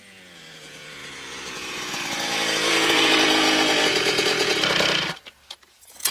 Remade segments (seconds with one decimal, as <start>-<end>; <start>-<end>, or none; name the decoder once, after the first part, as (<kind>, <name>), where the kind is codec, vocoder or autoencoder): 0.0-4.5 (vocoder, Vocos); 5.5-6.1